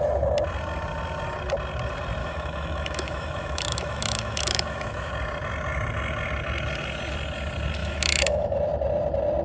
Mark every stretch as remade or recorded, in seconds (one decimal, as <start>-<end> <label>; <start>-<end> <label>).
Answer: 0.0-2.2 recorded; 2.2-5.1 remade; 5.1-7.8 recorded; 7.8-8.6 remade; 8.6-9.4 recorded